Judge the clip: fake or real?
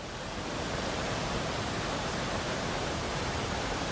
fake